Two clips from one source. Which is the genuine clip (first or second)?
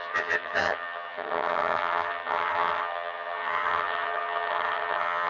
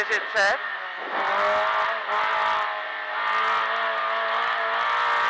second